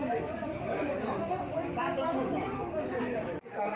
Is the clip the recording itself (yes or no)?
no